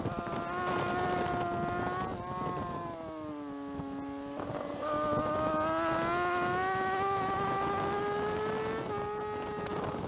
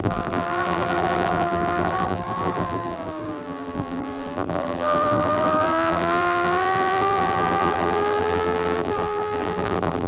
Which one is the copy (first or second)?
second